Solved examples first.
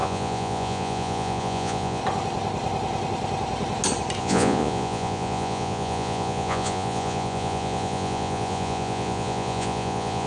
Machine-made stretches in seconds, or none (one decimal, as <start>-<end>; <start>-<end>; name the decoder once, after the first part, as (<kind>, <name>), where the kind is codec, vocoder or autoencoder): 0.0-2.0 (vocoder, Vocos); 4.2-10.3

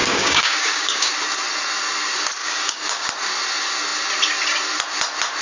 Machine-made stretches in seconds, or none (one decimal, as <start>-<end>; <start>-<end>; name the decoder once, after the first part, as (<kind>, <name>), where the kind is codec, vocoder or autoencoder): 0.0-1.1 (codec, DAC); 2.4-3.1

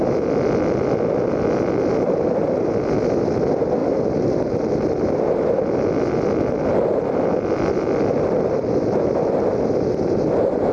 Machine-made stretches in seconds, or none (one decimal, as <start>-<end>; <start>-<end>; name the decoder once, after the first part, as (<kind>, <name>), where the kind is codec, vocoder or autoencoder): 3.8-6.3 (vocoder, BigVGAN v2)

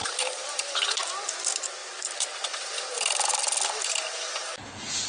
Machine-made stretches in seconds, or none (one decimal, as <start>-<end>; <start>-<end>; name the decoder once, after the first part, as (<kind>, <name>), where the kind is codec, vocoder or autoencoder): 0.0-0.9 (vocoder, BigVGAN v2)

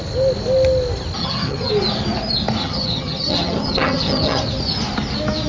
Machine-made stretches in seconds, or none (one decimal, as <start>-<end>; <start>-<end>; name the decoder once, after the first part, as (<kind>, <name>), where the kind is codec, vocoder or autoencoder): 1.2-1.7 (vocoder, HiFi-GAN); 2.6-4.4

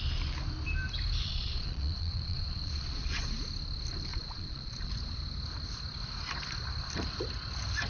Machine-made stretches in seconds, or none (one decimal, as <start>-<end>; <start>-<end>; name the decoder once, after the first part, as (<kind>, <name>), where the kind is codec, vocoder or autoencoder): 1.2-3.2 (vocoder, Vocos); 4.1-4.9